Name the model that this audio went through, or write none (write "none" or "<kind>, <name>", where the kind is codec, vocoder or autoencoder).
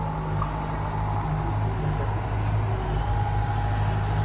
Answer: none